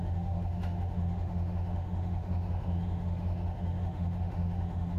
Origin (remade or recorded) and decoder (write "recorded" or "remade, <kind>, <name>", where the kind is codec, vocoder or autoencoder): remade, autoencoder, DAC-VAE